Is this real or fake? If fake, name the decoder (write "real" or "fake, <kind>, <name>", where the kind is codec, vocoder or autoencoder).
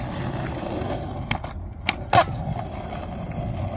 real